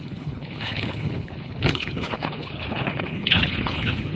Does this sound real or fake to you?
fake